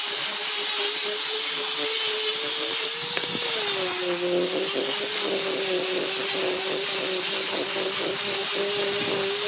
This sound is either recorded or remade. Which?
recorded